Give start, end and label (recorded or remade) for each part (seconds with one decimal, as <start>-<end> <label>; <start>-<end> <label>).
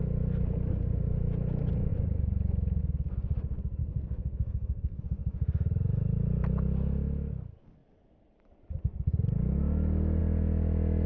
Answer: 0.0-3.8 recorded; 3.8-5.0 remade; 5.0-11.1 recorded